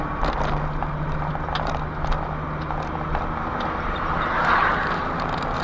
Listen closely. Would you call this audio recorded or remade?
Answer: recorded